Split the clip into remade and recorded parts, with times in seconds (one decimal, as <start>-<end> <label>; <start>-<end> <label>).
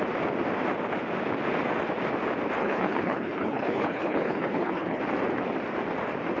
0.0-2.6 recorded; 2.6-5.0 remade; 5.0-6.4 recorded